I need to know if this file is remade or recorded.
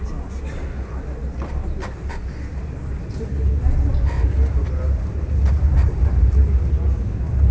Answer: recorded